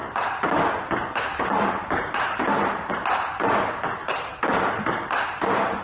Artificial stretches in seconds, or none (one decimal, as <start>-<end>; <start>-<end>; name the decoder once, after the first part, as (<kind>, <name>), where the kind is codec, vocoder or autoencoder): 0.0-2.9 (vocoder, BigVGAN v2); 4.0-5.1